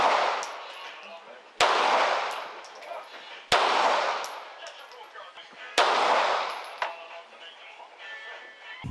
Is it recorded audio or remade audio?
recorded